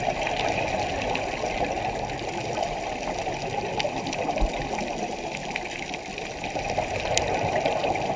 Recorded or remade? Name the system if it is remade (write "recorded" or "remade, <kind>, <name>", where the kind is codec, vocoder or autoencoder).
recorded